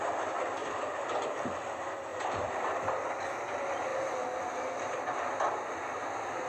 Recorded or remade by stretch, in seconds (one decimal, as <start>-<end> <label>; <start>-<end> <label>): 0.0-0.6 recorded; 0.6-1.2 remade; 1.2-2.1 recorded; 2.1-2.9 remade; 2.9-3.9 recorded; 3.9-5.2 remade; 5.2-6.5 recorded

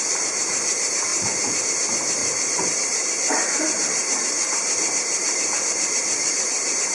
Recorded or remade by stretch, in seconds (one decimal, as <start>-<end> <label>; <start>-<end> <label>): 0.0-2.2 recorded; 2.2-6.3 remade; 6.3-6.9 recorded

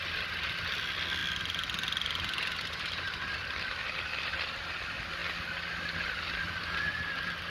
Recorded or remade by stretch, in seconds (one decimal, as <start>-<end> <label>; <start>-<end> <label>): 0.0-7.5 recorded